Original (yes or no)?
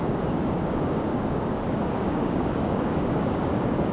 no